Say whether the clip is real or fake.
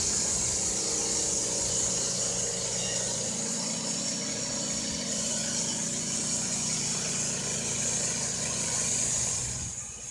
fake